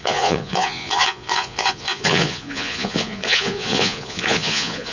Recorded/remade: remade